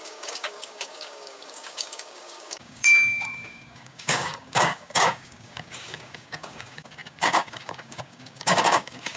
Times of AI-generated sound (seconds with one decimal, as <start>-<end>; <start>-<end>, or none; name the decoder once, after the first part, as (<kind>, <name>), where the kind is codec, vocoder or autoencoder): 0.0-9.2 (codec, DAC)